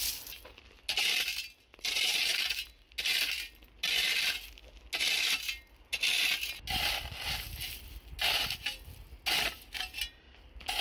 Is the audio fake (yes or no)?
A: no